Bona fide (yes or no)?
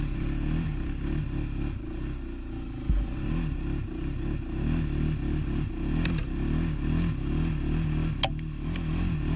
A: yes